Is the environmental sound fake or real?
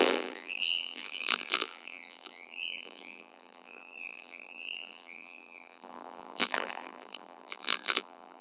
fake